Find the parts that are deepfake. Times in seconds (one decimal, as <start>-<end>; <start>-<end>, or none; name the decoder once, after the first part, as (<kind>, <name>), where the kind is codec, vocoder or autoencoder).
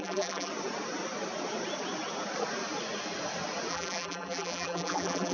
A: 0.0-0.5 (vocoder, BigVGAN v2); 3.7-5.3